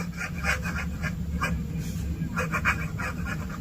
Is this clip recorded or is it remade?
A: recorded